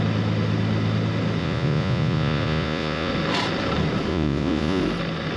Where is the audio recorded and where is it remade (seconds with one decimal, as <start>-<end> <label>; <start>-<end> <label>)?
0.0-1.4 recorded; 1.4-3.1 remade; 3.1-4.1 recorded; 4.1-4.8 remade; 4.8-5.4 recorded